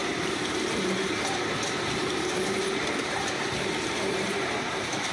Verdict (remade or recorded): remade